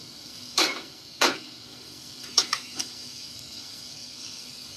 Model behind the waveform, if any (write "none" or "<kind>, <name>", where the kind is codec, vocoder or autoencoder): codec, SNAC